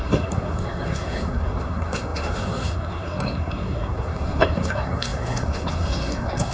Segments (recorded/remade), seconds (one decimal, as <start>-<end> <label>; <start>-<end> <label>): 0.0-6.5 remade